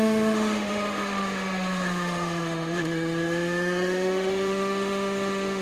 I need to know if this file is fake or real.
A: fake